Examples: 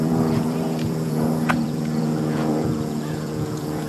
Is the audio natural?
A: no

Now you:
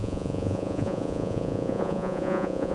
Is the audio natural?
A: no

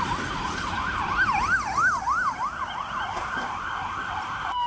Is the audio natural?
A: yes